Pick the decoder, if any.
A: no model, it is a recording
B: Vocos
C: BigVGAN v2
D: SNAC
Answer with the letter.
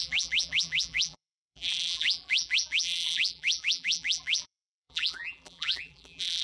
C